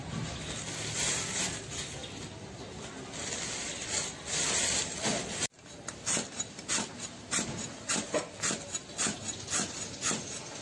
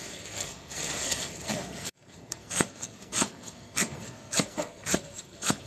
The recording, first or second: first